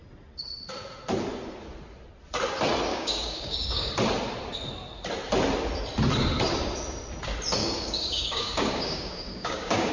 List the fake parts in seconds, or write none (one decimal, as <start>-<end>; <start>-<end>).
2.9-3.9; 7.6-9.9